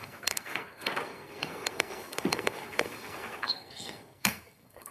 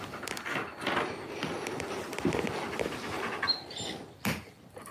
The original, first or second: second